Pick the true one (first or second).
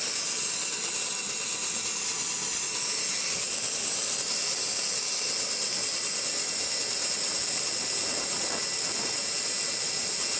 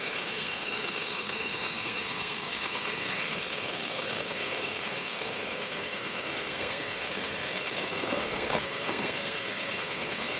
first